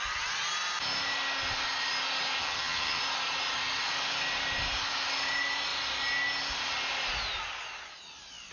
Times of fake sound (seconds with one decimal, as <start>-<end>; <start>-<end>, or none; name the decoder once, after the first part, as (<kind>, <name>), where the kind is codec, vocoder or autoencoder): 2.4-3.0 (vocoder, HiFi-GAN)